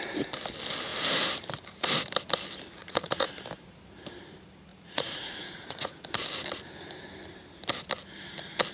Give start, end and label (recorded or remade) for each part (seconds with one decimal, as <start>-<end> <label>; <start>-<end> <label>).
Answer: 0.0-2.8 recorded; 2.8-3.3 remade; 3.3-4.7 recorded; 4.7-6.0 remade; 6.0-8.7 recorded